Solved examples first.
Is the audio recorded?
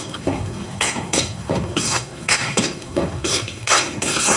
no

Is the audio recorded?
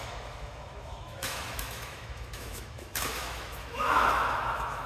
no